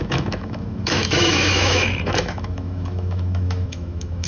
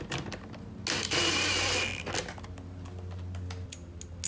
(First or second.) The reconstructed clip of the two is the first